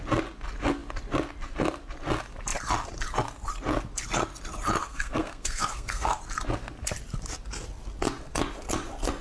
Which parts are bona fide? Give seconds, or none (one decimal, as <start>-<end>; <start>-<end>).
0.0-4.8; 6.2-9.2